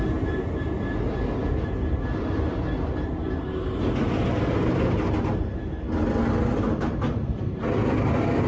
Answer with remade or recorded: recorded